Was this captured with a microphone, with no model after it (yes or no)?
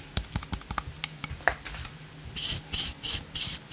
yes